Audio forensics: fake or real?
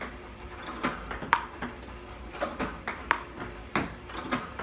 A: real